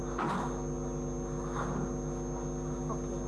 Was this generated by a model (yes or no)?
no